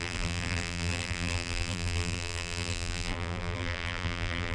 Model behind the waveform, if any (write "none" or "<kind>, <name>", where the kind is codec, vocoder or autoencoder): vocoder, BigVGAN v2